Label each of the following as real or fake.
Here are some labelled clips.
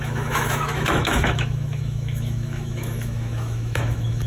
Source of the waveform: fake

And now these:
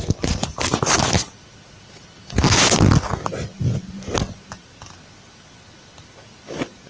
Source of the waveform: real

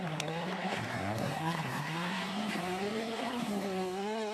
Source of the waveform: fake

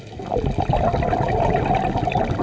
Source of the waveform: real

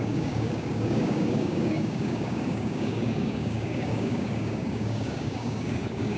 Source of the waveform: fake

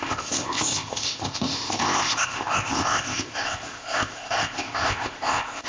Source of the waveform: fake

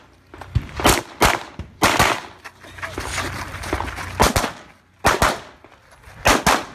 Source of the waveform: real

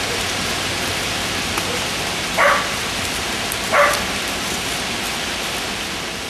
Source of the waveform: real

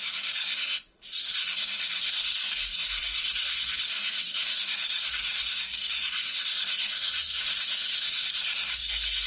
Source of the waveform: fake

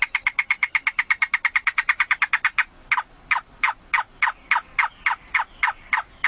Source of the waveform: real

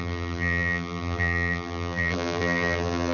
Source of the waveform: fake